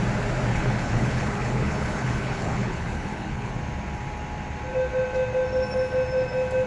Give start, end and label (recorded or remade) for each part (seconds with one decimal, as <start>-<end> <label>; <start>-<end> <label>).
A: 0.0-0.5 recorded; 0.5-3.5 remade; 3.5-6.7 recorded